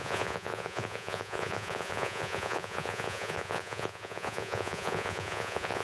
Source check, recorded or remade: remade